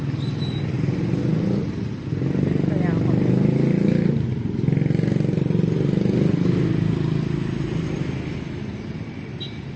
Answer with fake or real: real